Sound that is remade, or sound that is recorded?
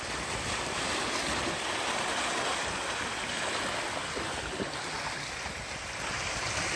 recorded